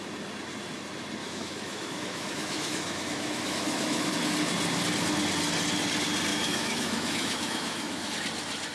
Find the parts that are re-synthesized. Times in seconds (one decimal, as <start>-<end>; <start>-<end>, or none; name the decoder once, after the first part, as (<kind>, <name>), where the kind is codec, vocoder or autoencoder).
1.2-4.1 (autoencoder, DAC-VAE); 6.3-8.1